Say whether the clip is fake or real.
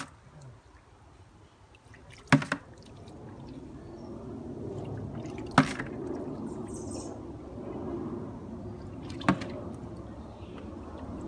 real